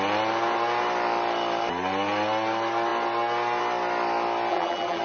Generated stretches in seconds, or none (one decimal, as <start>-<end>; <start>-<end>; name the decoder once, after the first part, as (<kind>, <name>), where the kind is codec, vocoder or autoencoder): 4.5-5.0 (vocoder, BigVGAN v2)